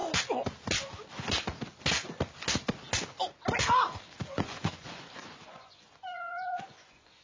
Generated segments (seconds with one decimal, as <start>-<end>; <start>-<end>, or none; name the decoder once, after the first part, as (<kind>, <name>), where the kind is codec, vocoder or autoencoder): 4.3-7.2 (vocoder, Vocos)

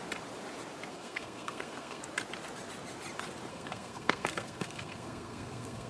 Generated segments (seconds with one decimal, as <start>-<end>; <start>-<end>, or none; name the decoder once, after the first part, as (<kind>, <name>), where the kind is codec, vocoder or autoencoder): 0.9-2.0 (codec, SNAC); 3.5-5.9

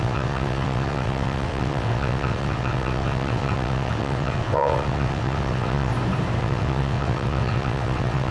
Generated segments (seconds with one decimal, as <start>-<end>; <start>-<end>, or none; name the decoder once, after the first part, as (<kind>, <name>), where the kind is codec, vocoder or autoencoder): 0.0-5.9 (vocoder, WaveNeXt); 6.4-8.3

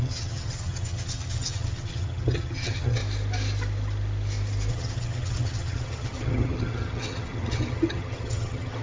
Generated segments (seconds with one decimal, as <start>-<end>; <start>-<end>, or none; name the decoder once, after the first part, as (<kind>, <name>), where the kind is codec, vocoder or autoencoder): 0.0-3.0 (vocoder, HiFi-GAN); 4.7-8.8

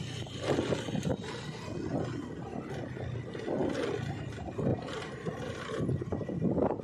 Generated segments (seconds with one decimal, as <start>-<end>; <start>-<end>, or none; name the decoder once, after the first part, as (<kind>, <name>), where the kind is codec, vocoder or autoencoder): 4.7-5.9 (vocoder, BigVGAN v2)

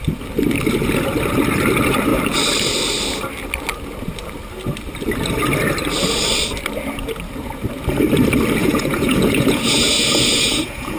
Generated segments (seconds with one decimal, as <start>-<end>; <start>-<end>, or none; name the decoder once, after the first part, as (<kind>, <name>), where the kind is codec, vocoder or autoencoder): 8.6-11.0 (vocoder, Vocos)